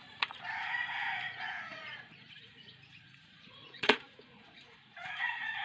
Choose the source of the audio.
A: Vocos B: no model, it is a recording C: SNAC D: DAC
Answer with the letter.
A